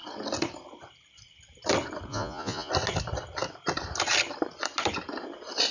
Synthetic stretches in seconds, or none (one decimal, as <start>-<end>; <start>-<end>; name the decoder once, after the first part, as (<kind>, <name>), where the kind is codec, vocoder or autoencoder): 2.1-2.7 (vocoder, Vocos)